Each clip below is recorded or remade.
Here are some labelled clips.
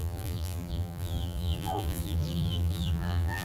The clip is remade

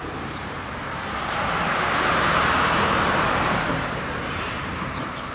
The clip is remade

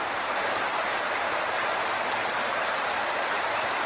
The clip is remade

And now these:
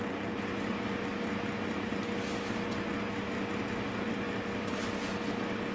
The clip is recorded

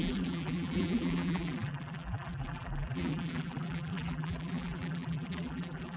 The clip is remade